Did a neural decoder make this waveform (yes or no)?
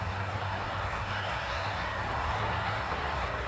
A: yes